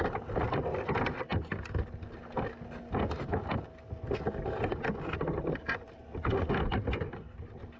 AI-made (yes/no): no